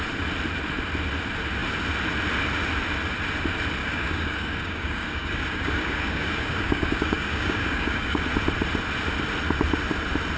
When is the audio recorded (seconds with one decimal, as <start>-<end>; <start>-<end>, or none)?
0.0-3.8; 8.2-10.4